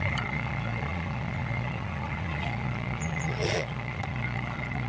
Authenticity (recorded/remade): remade